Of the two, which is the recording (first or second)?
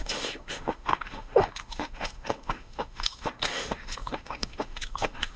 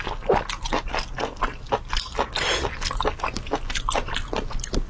second